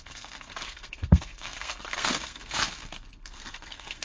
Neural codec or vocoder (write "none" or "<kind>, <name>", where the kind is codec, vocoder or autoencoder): codec, SNAC